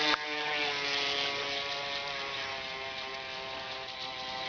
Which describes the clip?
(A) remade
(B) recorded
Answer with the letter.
B